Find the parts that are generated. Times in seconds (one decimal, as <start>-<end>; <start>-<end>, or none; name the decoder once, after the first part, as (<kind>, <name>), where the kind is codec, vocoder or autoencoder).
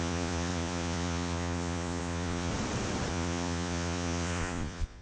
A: 0.0-2.5 (vocoder, Vocos); 3.1-5.0